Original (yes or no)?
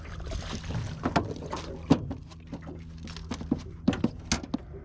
yes